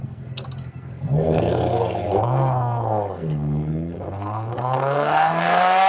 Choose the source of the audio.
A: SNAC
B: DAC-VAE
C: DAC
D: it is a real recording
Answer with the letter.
A